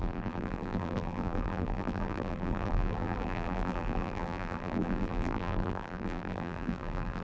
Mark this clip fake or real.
fake